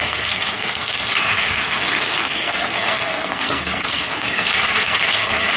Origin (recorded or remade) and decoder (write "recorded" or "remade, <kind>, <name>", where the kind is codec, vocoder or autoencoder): remade, codec, SNAC